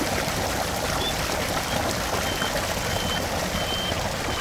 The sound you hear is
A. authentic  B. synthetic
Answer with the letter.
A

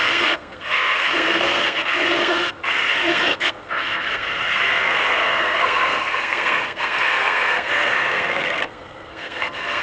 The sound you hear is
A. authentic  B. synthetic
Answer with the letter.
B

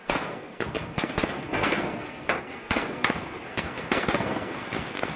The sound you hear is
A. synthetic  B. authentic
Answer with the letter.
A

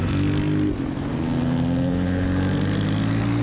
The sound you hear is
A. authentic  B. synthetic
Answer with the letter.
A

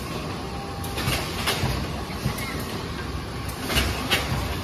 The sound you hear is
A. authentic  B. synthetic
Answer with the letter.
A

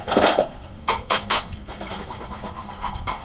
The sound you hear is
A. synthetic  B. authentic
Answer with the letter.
A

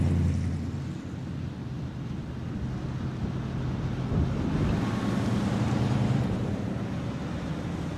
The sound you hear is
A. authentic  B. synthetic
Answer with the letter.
A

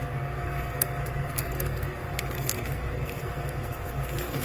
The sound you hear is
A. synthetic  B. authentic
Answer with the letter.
A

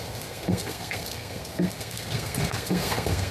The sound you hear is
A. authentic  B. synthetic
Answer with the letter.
B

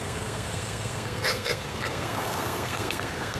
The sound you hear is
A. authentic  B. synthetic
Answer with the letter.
B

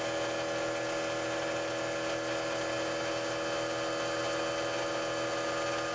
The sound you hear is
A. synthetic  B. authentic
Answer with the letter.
B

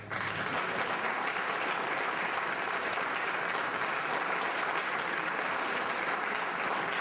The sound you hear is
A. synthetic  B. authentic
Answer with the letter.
B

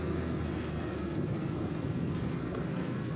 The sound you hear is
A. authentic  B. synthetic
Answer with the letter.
B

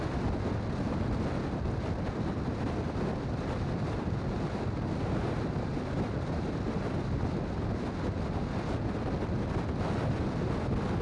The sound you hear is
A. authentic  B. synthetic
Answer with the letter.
A